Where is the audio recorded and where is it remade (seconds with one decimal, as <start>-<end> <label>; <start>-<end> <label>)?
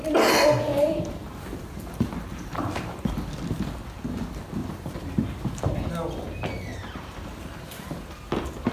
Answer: 0.0-0.7 recorded; 0.7-3.1 remade; 3.1-4.6 recorded; 4.6-5.9 remade; 5.9-6.7 recorded; 6.7-7.7 remade; 7.7-8.7 recorded